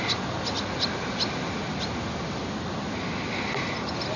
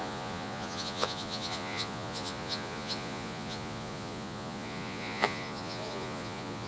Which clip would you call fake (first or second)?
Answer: second